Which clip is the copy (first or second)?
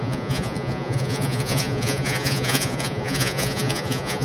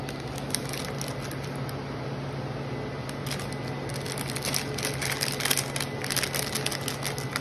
first